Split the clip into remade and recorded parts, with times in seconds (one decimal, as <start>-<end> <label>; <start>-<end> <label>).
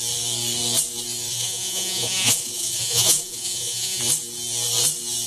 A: 0.0-1.3 recorded; 1.3-4.0 remade; 4.0-5.3 recorded